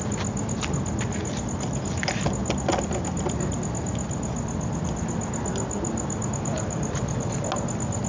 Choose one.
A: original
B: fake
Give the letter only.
A